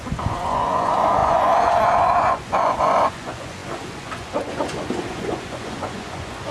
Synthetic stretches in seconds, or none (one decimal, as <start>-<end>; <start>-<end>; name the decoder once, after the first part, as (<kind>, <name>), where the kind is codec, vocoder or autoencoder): 0.0-6.5 (vocoder, Vocos)